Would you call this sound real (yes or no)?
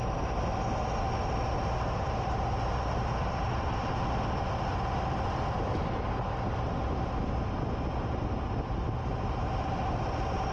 yes